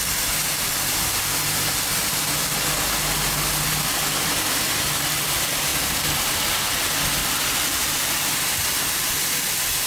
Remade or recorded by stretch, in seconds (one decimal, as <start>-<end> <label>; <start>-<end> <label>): 0.0-7.2 recorded; 7.2-8.6 remade; 8.6-9.9 recorded